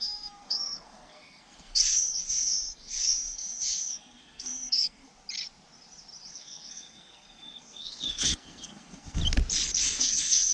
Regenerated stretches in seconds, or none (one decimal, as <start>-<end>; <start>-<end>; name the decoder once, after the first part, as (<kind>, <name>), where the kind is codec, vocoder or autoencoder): 0.0-5.1 (codec, SNAC); 6.3-9.2; 9.8-10.5